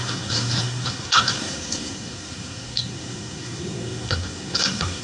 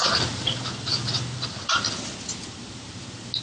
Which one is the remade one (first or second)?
first